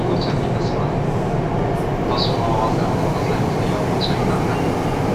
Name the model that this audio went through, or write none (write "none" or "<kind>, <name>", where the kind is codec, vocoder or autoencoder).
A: none